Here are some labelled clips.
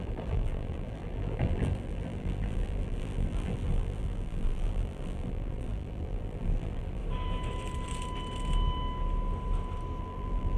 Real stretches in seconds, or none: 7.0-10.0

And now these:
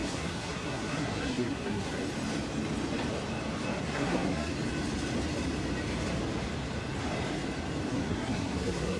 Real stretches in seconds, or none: 2.0-3.8; 4.5-7.9